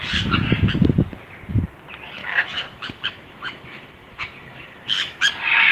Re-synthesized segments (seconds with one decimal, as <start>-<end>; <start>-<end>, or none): 2.2-5.2